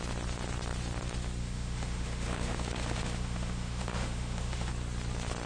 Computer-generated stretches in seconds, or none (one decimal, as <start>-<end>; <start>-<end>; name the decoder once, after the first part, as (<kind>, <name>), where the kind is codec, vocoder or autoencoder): 1.4-4.7 (autoencoder, DAC-VAE)